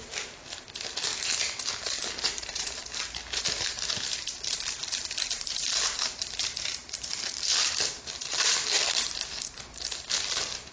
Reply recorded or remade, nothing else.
remade